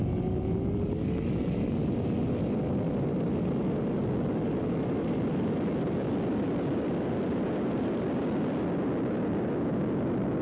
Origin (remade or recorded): recorded